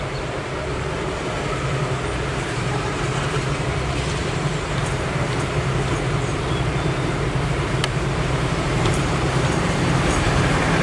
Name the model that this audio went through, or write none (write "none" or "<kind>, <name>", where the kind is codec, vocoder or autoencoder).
vocoder, BigVGAN v2